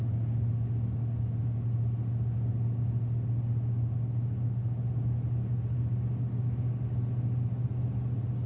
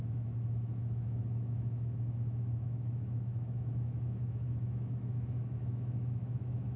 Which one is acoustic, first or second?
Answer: first